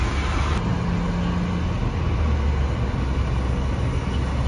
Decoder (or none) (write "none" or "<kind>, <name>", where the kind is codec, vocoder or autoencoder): none